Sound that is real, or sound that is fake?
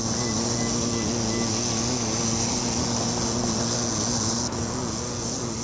real